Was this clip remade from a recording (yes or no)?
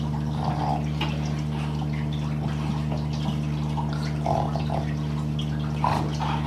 no